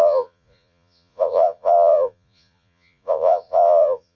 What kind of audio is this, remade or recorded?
remade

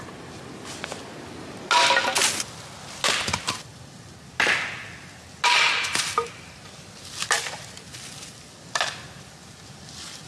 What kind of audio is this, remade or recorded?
recorded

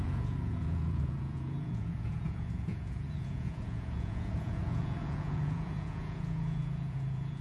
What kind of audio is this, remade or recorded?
remade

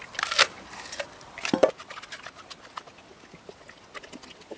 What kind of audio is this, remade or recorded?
recorded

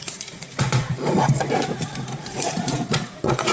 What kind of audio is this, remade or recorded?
remade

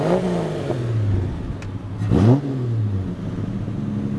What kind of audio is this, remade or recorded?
recorded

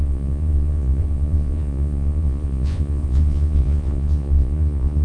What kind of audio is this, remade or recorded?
remade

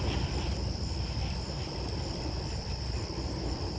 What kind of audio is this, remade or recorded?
recorded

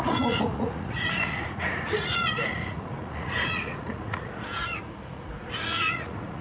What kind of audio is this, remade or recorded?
remade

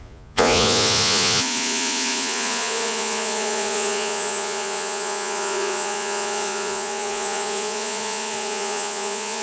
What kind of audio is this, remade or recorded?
remade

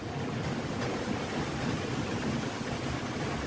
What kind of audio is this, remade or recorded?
recorded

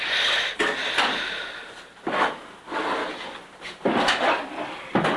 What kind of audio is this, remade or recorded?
recorded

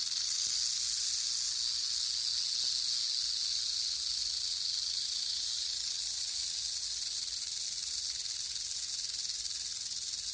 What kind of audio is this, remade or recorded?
recorded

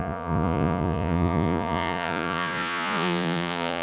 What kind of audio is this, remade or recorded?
remade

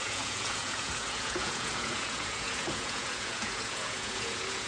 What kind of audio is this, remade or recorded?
remade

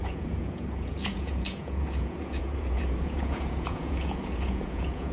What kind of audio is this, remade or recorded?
remade